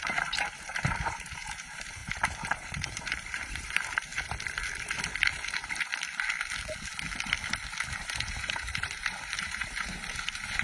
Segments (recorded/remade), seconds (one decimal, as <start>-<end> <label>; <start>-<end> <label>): 0.0-4.1 remade; 4.1-5.3 recorded; 5.3-5.9 remade; 5.9-8.0 recorded; 8.0-10.6 remade